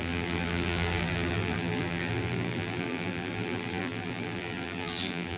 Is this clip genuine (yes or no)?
no